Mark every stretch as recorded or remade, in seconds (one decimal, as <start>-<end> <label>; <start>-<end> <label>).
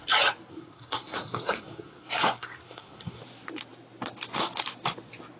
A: 0.0-0.5 recorded; 0.5-3.2 remade; 3.2-5.4 recorded